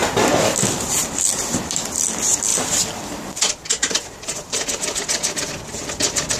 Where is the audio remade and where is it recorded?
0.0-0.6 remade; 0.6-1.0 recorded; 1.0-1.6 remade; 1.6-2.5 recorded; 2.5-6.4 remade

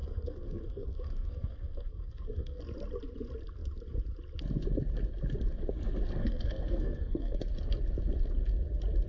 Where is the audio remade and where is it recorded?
0.0-2.6 remade; 2.6-6.2 recorded; 6.2-7.4 remade; 7.4-9.1 recorded